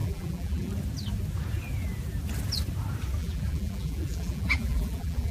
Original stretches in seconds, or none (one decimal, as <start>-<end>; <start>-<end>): 0.7-3.2